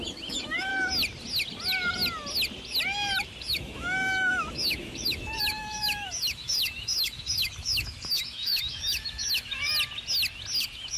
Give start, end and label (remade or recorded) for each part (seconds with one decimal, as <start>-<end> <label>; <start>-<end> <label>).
0.0-0.7 remade; 0.7-3.4 recorded; 3.4-9.7 remade; 9.7-10.6 recorded; 10.6-11.0 remade